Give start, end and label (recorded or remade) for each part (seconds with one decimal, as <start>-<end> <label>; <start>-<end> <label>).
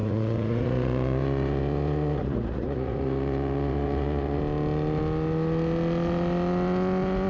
0.0-4.4 remade; 4.4-7.3 recorded